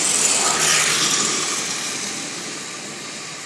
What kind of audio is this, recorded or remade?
recorded